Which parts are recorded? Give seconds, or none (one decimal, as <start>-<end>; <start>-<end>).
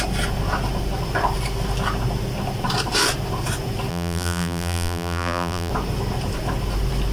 0.0-3.9; 5.7-7.1